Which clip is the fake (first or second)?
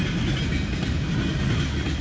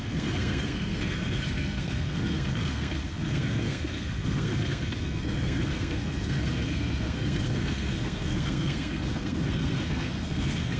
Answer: second